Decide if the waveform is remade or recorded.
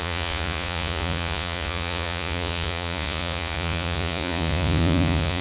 remade